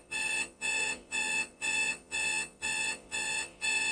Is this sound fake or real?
fake